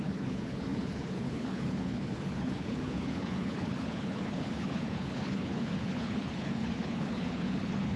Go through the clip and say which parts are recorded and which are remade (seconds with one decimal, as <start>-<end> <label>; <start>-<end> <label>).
0.0-8.0 remade